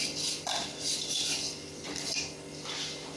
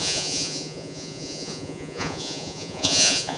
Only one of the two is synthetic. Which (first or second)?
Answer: second